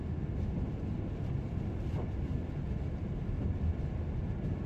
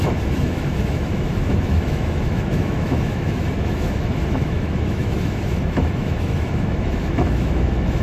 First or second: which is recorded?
first